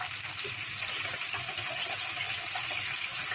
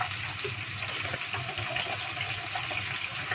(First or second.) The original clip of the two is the second